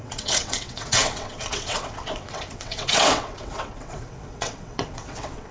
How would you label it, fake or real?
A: fake